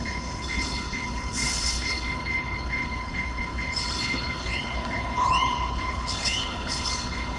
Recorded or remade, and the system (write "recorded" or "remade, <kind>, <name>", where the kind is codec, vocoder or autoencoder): remade, codec, HILCodec